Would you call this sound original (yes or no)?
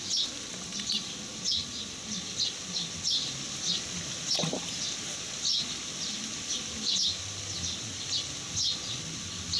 yes